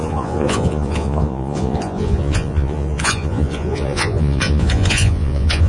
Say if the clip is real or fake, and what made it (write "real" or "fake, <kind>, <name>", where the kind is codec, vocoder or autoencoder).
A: fake, vocoder, Vocos